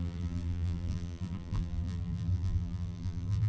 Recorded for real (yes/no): no